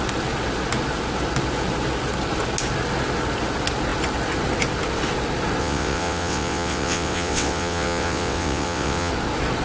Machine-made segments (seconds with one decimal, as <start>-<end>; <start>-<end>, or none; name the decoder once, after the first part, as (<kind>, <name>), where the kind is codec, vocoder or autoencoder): 5.6-9.1 (vocoder, WaveNeXt)